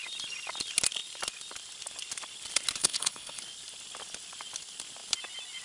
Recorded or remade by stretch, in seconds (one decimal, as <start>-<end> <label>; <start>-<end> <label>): 0.0-2.8 recorded; 2.8-3.4 remade; 3.4-5.6 recorded